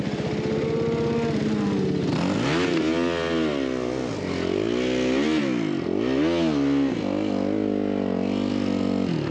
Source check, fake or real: real